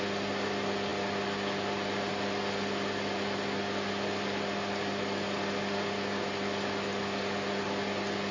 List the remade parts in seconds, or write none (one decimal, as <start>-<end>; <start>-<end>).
none